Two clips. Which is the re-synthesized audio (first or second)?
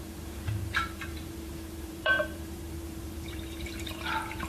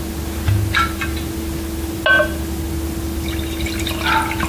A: first